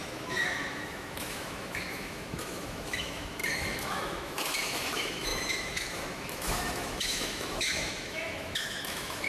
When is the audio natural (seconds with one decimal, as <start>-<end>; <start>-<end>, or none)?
none